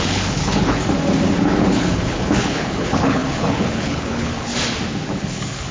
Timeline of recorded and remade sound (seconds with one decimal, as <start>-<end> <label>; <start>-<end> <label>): 0.0-0.8 remade; 0.8-1.4 recorded; 1.4-4.5 remade; 4.5-5.1 recorded; 5.1-5.7 remade